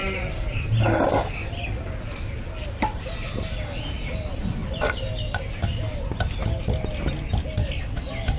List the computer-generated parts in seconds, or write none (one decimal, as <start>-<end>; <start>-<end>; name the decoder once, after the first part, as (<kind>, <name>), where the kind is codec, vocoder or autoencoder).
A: none